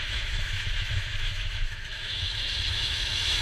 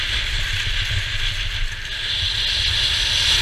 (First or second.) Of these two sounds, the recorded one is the second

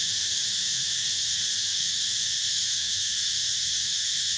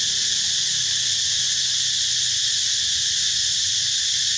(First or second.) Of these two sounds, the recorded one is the second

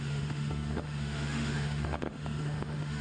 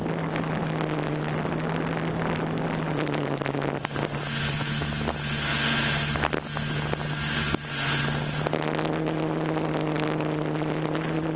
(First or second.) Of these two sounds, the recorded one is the second